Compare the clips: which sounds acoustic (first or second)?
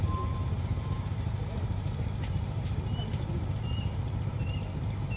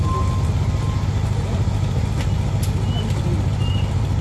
second